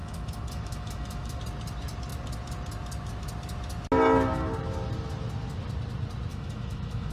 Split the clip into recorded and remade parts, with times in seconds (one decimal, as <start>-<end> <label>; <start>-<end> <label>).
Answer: 0.0-1.4 remade; 1.4-6.3 recorded; 6.3-7.1 remade